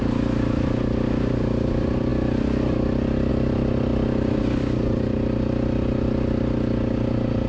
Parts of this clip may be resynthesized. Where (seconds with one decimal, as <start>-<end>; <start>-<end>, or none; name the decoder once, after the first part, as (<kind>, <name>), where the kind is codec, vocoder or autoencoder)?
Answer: none